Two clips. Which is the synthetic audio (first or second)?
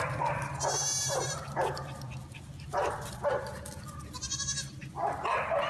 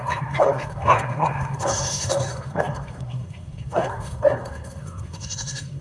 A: second